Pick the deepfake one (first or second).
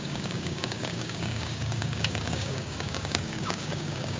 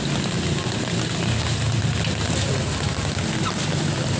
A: first